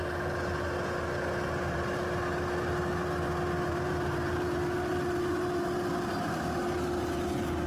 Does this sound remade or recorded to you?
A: recorded